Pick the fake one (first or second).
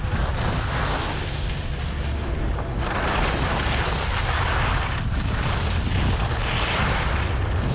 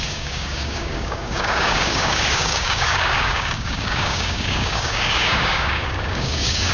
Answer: second